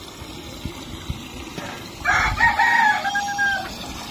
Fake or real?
real